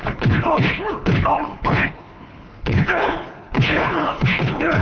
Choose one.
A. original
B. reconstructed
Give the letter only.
B